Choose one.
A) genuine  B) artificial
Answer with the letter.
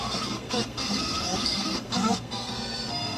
B